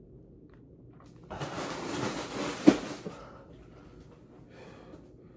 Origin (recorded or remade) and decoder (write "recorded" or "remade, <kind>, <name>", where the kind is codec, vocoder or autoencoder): recorded